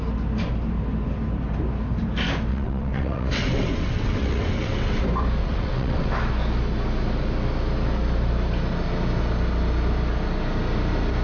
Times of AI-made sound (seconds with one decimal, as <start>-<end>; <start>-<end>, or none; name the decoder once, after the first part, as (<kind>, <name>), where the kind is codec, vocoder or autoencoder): 2.5-5.0 (vocoder, WaveNeXt); 5.4-6.1